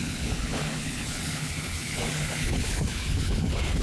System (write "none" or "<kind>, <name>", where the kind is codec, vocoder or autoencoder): codec, HILCodec